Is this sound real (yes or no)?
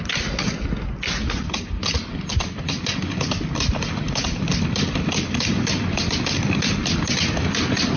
yes